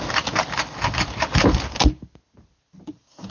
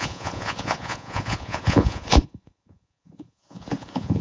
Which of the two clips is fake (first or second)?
second